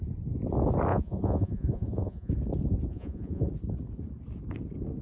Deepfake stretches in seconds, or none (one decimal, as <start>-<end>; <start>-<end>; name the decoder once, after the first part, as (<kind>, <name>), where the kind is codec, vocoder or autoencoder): 0.9-2.3 (vocoder, Vocos); 2.9-3.5